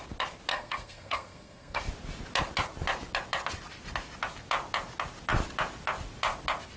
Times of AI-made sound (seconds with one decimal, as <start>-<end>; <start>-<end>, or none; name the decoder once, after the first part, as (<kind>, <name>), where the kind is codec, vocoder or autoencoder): 0.5-1.8 (codec, SNAC)